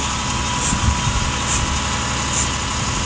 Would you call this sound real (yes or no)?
yes